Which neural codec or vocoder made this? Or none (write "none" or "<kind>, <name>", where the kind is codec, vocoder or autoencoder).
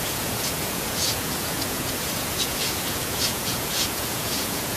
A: vocoder, Vocos